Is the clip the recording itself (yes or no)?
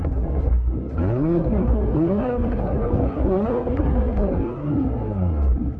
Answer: no